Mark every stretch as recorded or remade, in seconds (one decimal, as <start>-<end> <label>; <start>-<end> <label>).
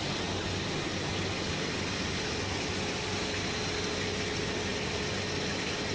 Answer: 0.0-5.9 recorded